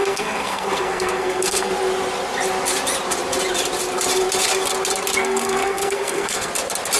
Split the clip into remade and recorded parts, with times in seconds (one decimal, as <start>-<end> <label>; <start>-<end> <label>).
0.0-1.7 remade; 1.7-5.2 recorded; 5.2-6.5 remade; 6.5-7.0 recorded

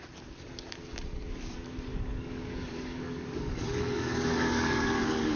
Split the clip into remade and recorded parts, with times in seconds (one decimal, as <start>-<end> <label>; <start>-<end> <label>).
0.0-1.9 recorded; 1.9-5.4 remade

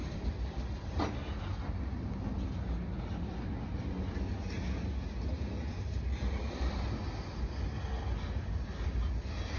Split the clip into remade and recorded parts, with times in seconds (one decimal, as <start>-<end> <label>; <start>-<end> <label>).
0.0-1.1 remade; 1.1-9.6 recorded

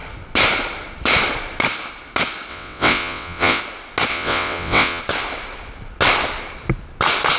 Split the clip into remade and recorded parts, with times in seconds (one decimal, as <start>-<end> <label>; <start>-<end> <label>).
0.0-2.5 recorded; 2.5-3.6 remade; 3.6-4.1 recorded; 4.1-5.0 remade; 5.0-7.4 recorded

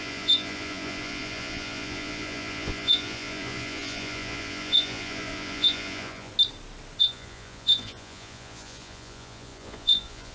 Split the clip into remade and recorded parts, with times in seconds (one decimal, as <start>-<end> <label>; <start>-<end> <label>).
0.0-6.3 remade; 6.3-7.0 recorded; 7.0-10.3 remade

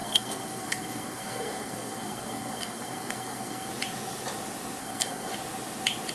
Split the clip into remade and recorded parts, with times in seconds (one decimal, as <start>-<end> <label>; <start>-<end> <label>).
0.0-3.7 remade; 3.7-4.8 recorded; 4.8-5.3 remade; 5.3-6.1 recorded

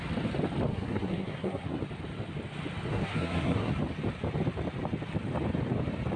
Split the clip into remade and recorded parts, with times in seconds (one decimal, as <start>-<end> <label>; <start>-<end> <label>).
0.0-0.7 recorded; 0.7-1.8 remade; 1.8-2.9 recorded; 2.9-3.7 remade; 3.7-6.2 recorded